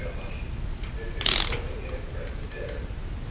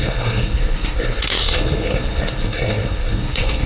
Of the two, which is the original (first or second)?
first